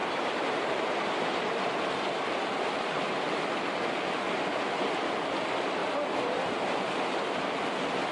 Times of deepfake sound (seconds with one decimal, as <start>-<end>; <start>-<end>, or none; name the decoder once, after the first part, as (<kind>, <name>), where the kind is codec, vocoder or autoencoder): 0.0-1.9 (vocoder, BigVGAN v2); 5.8-6.8